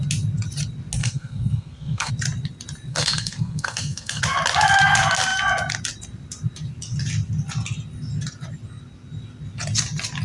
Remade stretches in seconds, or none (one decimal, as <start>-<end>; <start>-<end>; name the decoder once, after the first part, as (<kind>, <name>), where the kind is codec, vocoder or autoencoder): 1.0-2.1 (codec, SNAC); 2.9-4.2